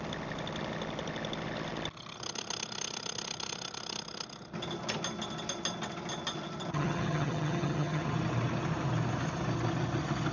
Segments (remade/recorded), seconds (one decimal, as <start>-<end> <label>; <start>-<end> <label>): 0.0-6.7 recorded; 6.7-8.0 remade; 8.0-10.3 recorded